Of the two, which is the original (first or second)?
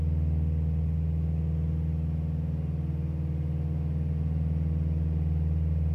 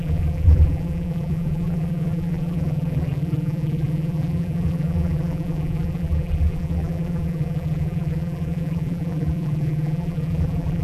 first